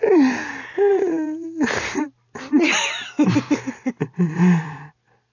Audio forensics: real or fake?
real